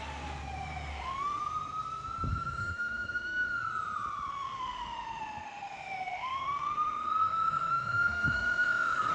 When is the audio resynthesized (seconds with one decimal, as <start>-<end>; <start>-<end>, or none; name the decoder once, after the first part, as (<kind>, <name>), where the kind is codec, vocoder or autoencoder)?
0.9-1.4 (autoencoder, DAC-VAE); 2.3-3.6; 4.3-9.1